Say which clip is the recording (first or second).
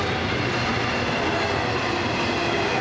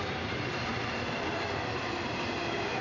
first